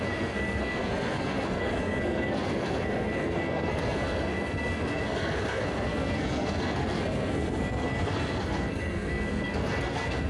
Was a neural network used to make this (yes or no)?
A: yes